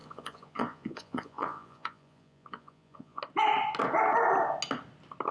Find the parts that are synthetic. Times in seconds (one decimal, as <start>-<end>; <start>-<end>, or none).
0.0-3.2